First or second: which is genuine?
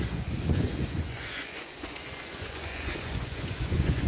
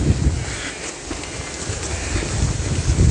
second